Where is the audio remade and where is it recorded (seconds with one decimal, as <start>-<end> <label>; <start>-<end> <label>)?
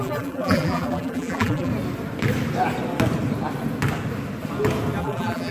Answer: 0.0-1.7 remade; 1.7-5.0 recorded; 5.0-5.5 remade